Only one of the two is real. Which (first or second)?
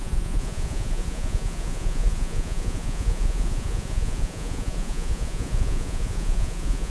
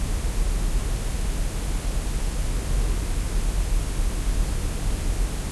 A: second